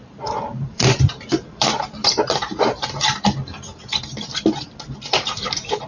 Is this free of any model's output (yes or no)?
no